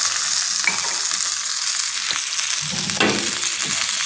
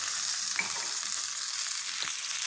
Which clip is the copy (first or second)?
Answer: second